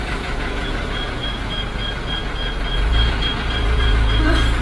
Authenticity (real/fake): fake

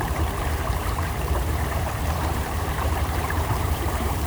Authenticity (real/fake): fake